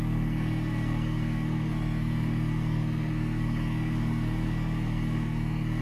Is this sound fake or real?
fake